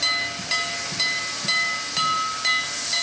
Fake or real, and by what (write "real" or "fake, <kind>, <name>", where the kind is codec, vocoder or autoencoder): real